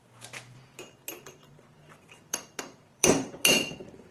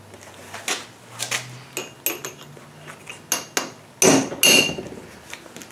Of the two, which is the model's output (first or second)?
first